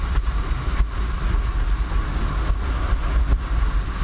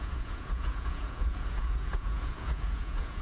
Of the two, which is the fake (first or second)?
second